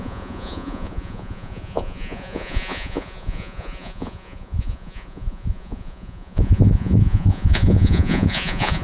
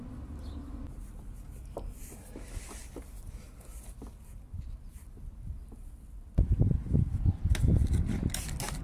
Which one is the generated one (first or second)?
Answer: first